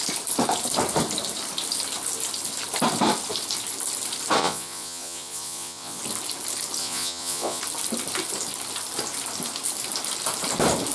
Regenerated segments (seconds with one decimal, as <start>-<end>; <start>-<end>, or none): 4.4-6.0; 6.8-7.6